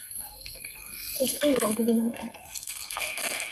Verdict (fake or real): fake